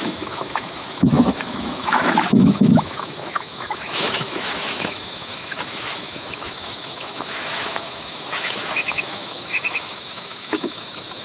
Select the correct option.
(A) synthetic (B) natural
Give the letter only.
A